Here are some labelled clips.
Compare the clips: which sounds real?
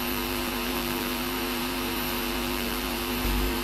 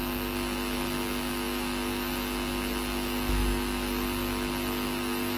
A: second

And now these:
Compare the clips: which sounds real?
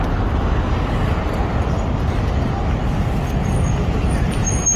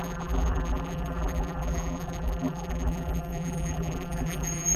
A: first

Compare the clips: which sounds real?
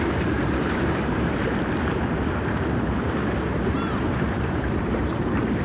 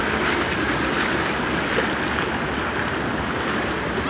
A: second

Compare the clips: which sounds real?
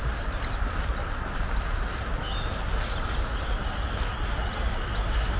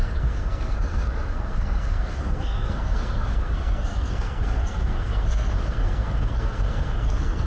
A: first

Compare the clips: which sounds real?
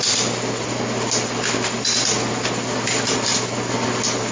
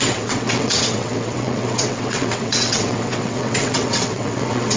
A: first